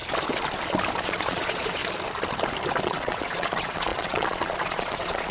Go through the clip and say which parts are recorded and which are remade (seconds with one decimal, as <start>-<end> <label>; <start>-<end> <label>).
0.0-1.0 recorded; 1.0-1.8 remade; 1.8-2.8 recorded; 2.8-5.3 remade